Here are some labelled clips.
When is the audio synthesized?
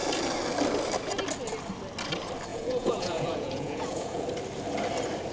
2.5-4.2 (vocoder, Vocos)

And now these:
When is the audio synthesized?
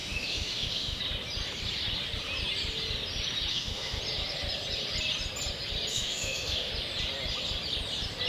0.0-1.0 (autoencoder, DAC-VAE); 3.5-4.0; 5.9-6.7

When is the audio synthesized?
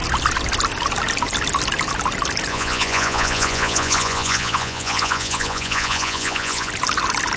2.5-6.7 (vocoder, Vocos)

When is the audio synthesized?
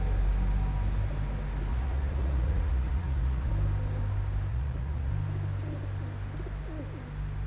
1.7-3.5 (vocoder, Vocos); 4.5-5.1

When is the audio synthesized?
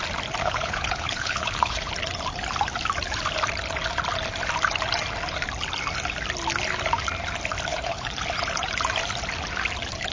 0.4-1.9 (codec, HILCodec); 7.7-8.2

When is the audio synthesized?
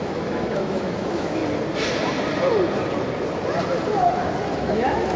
0.0-1.4 (autoencoder, DAC-VAE); 4.5-5.2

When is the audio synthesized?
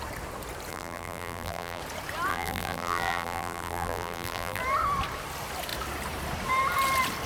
0.7-1.8 (vocoder, BigVGAN v2); 2.3-4.6